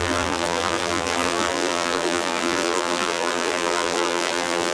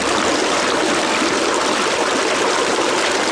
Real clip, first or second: second